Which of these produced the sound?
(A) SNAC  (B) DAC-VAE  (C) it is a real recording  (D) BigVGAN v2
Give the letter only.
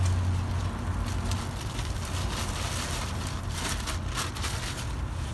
C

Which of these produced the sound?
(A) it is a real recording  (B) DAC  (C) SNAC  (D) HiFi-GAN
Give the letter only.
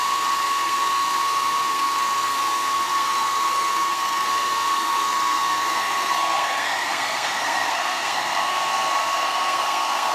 C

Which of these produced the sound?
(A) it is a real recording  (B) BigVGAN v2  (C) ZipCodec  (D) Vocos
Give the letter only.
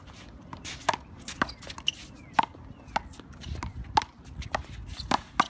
A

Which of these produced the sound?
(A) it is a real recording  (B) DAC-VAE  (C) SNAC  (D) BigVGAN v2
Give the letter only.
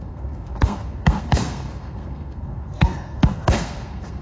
C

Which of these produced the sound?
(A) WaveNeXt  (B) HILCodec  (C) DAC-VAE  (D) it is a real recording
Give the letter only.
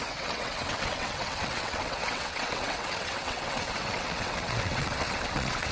A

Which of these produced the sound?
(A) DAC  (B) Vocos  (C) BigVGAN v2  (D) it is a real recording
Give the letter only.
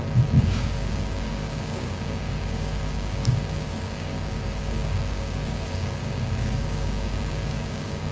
A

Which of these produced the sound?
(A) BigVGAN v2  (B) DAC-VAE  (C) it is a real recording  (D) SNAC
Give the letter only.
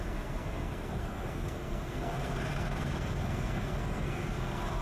D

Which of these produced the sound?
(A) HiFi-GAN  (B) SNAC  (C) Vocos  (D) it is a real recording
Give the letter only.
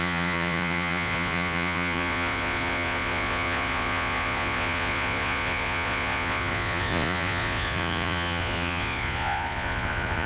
C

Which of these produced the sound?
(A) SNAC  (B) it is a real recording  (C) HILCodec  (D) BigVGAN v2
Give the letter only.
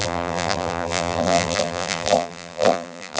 D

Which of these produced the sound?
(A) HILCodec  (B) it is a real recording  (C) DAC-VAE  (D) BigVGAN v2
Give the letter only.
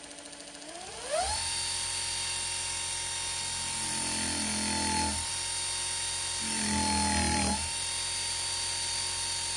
B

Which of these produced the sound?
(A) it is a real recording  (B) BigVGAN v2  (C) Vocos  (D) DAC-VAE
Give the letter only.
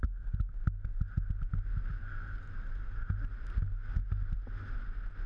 A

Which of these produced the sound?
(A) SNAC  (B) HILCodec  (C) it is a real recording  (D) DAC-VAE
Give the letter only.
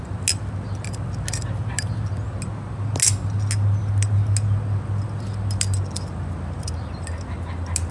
C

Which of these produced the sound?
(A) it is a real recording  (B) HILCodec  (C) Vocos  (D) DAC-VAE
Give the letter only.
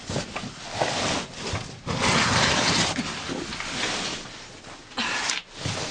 A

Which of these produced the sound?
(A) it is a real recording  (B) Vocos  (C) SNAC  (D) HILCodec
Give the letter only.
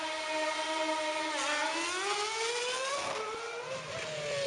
A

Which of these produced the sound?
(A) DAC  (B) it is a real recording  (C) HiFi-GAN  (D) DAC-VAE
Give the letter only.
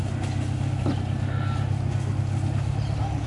B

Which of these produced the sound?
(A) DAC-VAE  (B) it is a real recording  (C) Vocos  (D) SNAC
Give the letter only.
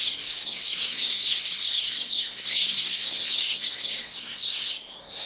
D